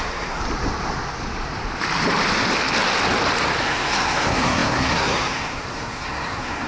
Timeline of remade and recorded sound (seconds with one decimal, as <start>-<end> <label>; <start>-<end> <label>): 0.0-0.4 remade; 0.4-3.6 recorded; 3.6-6.7 remade